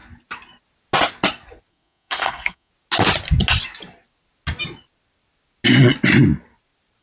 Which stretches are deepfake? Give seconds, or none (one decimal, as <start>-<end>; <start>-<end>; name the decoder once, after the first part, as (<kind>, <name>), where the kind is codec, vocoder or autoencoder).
1.7-2.7 (codec, SNAC)